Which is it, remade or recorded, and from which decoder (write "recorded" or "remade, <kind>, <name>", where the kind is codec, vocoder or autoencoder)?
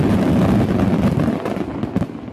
recorded